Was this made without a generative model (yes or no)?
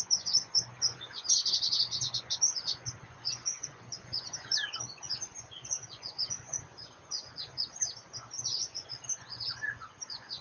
no